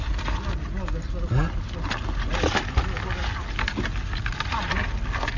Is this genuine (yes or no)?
yes